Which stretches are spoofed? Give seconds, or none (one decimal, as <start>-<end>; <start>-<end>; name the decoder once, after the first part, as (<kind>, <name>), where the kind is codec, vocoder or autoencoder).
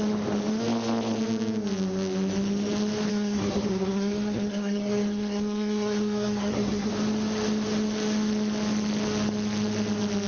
3.1-6.9 (codec, SNAC)